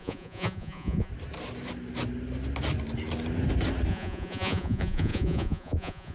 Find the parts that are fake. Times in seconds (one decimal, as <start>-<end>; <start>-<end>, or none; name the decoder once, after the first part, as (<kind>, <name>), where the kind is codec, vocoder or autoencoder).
0.0-1.1 (vocoder, Vocos); 3.9-6.1